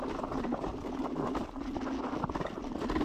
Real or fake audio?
real